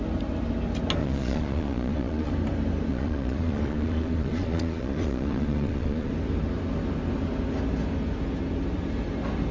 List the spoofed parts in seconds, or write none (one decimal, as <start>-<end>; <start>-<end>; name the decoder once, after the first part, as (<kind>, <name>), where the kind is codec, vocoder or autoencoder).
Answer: 1.0-2.3 (vocoder, Vocos); 2.9-6.1

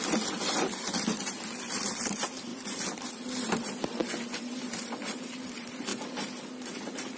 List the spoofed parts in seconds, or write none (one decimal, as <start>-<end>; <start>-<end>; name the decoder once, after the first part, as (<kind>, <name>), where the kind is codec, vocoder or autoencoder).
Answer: 0.0-2.5 (vocoder, BigVGAN v2); 3.1-4.0; 4.6-7.2

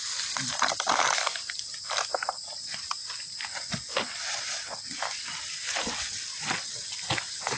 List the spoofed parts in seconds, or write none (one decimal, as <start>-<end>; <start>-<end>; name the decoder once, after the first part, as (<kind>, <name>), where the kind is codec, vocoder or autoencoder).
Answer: none

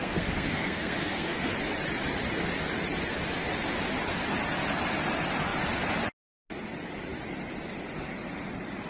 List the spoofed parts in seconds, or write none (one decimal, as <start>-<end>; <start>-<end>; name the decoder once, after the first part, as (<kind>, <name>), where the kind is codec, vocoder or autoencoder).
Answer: 0.0-1.5 (codec, SNAC)

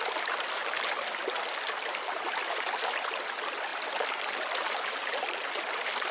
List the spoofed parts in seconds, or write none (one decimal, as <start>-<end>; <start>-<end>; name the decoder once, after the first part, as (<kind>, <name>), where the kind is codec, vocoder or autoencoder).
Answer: 0.0-0.6 (vocoder, BigVGAN v2); 1.5-6.1